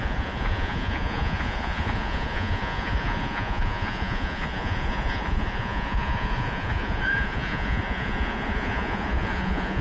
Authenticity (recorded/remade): remade